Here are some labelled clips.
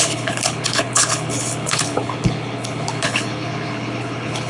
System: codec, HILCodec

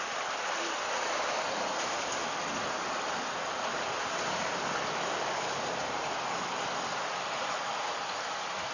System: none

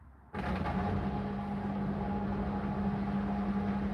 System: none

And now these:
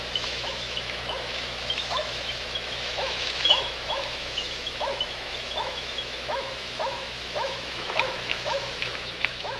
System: autoencoder, DAC-VAE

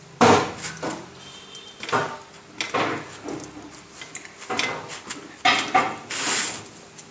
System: none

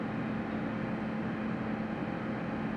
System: none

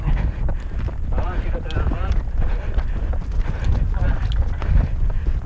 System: none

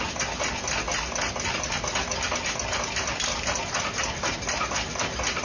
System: none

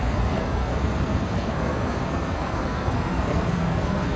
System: codec, SNAC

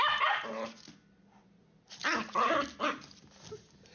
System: none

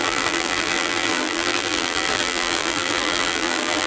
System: vocoder, BigVGAN v2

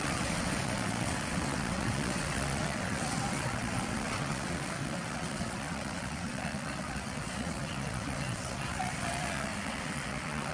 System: vocoder, WaveNeXt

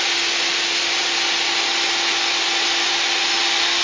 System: none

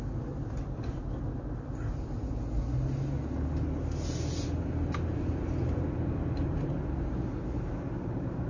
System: none